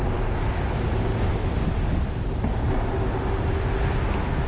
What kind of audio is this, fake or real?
real